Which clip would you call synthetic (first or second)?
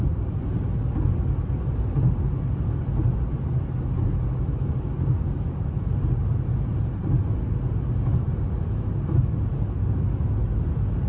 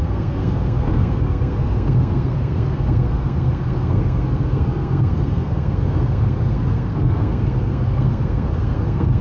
second